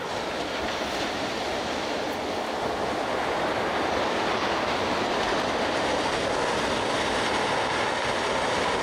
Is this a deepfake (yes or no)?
no